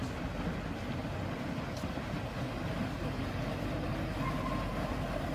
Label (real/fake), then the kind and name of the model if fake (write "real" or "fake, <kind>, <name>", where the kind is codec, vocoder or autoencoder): real